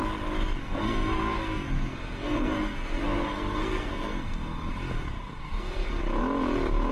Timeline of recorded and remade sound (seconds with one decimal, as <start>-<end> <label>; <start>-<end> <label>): 0.0-0.6 recorded; 0.6-4.7 remade; 4.7-5.4 recorded; 5.4-6.0 remade; 6.0-6.9 recorded